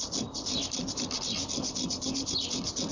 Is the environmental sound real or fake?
real